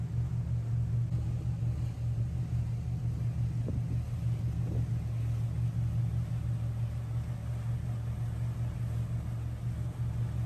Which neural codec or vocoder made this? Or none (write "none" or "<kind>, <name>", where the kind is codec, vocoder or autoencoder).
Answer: none